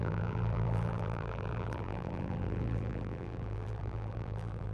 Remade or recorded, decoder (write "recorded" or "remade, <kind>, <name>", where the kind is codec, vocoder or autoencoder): remade, vocoder, BigVGAN v2